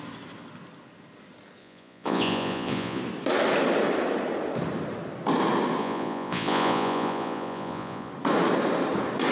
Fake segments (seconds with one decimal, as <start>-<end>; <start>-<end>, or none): 1.6-3.0; 5.8-8.1